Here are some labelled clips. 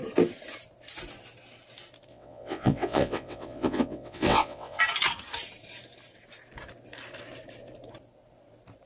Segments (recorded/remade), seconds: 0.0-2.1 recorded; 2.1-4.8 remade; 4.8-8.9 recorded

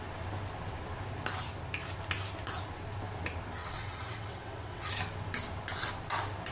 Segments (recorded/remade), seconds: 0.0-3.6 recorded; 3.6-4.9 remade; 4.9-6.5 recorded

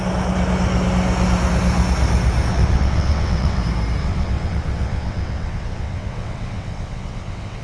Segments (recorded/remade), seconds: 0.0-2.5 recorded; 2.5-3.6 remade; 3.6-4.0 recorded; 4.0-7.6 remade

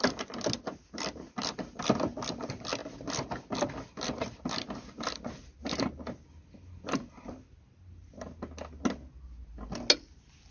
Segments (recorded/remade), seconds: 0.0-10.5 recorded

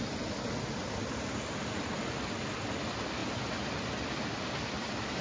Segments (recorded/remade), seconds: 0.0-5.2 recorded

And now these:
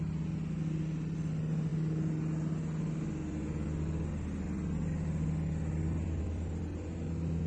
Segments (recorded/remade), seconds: 0.0-7.5 recorded